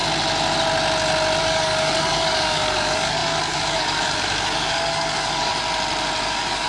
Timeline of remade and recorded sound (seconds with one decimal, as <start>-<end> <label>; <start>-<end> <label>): 0.0-1.4 recorded; 1.4-5.5 remade; 5.5-6.2 recorded; 6.2-6.7 remade